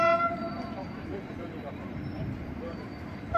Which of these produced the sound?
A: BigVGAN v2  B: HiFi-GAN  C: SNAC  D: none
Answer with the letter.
A